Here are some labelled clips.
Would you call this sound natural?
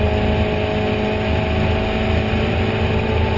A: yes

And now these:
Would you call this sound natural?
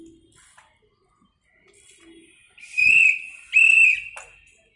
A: yes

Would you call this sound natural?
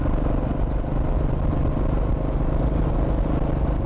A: yes